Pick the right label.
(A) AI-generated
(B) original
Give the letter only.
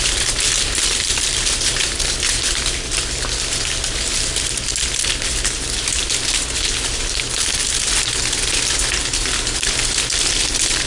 B